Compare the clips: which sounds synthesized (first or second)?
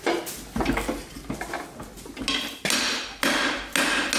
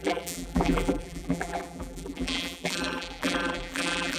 second